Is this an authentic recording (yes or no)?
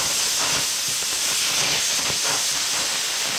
yes